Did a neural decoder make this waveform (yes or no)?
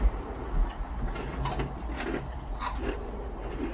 no